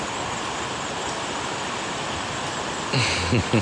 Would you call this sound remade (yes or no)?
no